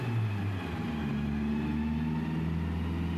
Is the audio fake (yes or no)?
no